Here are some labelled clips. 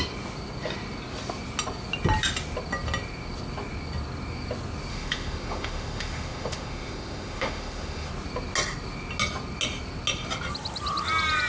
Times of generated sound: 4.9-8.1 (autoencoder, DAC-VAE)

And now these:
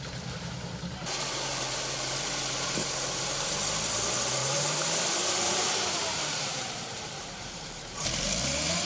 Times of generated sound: 2.8-3.6 (vocoder, BigVGAN v2); 4.4-8.9

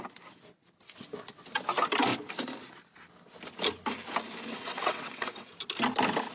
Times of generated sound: 4.5-5.5 (vocoder, WaveNeXt)